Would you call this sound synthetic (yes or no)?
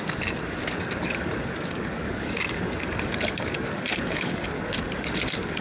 yes